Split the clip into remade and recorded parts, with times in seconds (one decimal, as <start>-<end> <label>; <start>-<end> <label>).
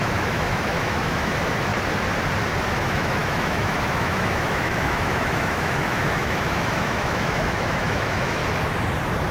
0.0-1.7 remade; 1.7-2.7 recorded; 2.7-8.4 remade; 8.4-9.3 recorded